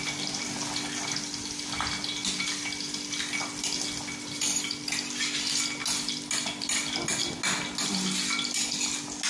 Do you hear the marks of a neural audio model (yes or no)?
no